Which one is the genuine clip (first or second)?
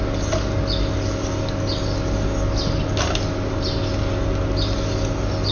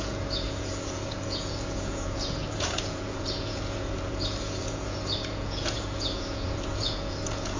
first